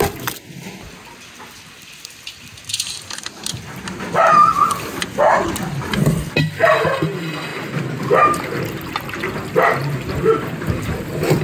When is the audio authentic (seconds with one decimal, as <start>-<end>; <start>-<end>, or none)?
0.0-4.5; 5.5-9.8

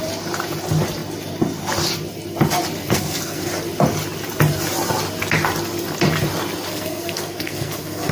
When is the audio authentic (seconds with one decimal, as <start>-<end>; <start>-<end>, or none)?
0.0-2.8; 3.5-6.7

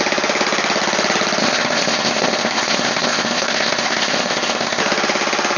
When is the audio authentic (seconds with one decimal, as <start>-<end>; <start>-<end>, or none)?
0.0-1.4; 4.8-5.6

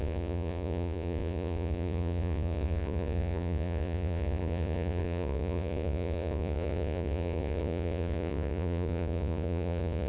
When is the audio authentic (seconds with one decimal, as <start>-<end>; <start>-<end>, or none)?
none

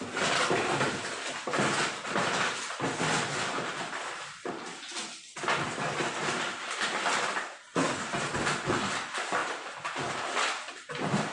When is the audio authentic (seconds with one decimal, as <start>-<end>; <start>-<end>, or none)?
0.0-11.3